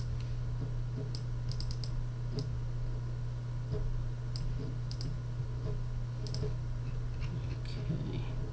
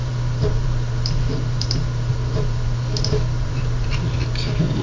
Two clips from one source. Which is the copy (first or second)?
second